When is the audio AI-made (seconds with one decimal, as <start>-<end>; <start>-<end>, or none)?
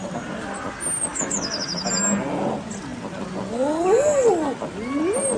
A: 1.1-1.9